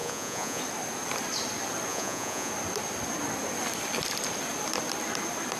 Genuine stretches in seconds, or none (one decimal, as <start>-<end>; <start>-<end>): 0.6-1.9; 2.5-5.6